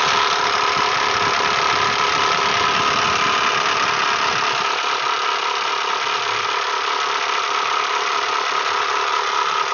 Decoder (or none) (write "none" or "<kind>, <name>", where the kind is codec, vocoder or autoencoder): none